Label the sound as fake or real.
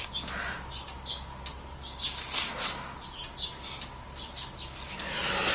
real